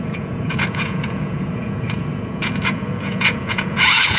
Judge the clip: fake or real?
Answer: fake